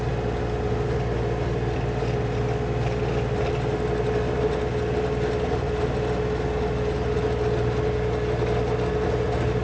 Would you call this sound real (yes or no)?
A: yes